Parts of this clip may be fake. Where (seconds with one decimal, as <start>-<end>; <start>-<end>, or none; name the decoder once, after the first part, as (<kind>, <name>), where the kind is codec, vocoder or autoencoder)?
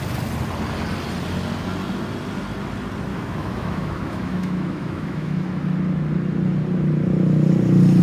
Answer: 3.1-5.6 (autoencoder, DAC-VAE)